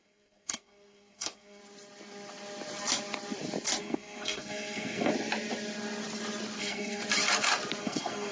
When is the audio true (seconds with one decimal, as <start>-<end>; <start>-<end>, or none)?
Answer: 1.6-3.8; 5.1-6.6; 7.0-7.8